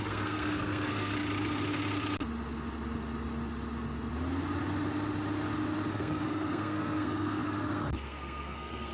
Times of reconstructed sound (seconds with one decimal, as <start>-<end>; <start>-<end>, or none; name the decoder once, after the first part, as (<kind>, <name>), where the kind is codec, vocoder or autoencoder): 0.0-1.1 (codec, SNAC); 5.9-8.9